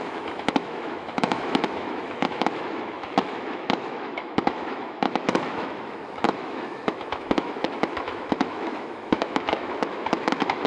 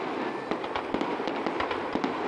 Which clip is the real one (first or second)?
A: second